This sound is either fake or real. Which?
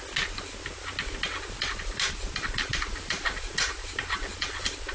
real